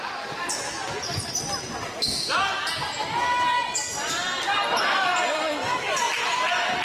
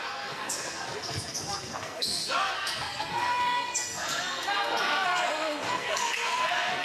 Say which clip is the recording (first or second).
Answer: first